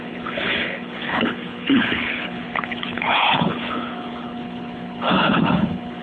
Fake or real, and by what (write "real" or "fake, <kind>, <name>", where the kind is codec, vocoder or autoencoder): fake, codec, HILCodec